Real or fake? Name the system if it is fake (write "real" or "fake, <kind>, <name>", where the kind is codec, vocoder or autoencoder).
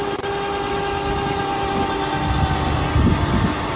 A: real